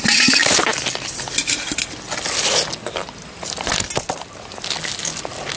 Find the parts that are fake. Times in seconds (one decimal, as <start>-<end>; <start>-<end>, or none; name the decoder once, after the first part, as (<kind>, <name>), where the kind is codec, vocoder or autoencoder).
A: none